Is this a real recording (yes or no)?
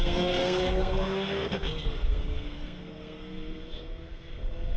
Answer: no